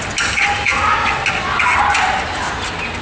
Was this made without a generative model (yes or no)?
yes